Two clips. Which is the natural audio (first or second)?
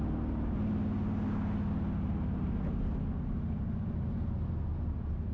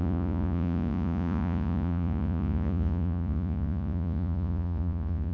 first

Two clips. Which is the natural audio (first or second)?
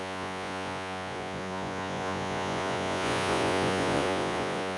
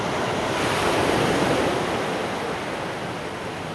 second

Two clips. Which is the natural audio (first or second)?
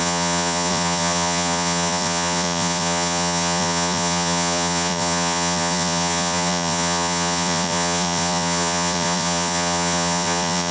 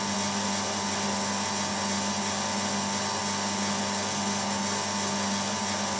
second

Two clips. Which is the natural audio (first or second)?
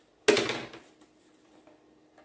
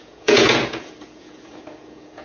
first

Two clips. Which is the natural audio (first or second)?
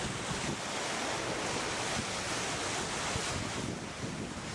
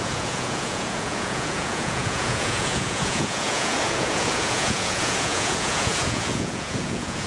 first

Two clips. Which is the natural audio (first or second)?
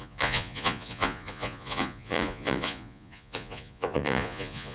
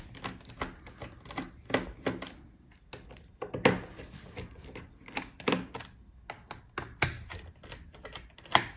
second